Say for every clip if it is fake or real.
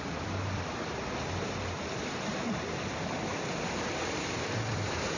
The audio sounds fake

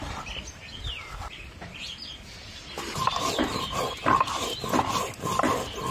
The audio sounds real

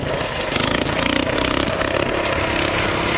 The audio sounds real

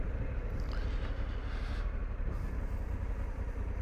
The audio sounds real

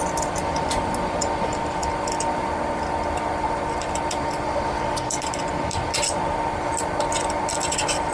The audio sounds real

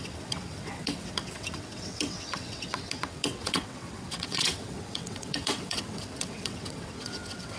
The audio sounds fake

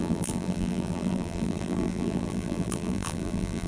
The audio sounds fake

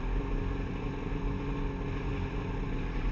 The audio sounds real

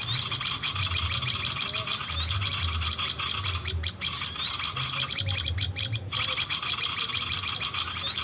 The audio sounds real